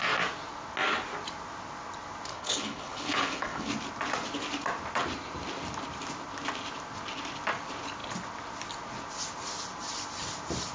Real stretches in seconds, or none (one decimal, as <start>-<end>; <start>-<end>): 0.0-2.3; 3.7-10.7